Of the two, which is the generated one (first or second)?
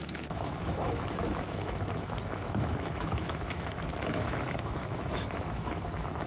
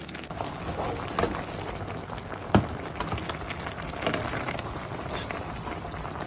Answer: first